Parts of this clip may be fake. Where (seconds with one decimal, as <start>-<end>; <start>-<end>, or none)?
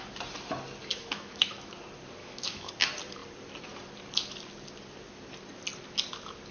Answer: 0.9-1.7; 2.2-2.7